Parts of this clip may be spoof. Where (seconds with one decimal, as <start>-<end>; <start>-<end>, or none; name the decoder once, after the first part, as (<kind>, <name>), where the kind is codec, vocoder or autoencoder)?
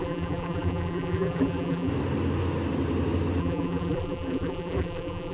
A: 0.0-1.9 (vocoder, BigVGAN v2); 3.4-5.3